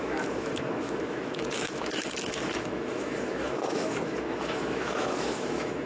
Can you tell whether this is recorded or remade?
remade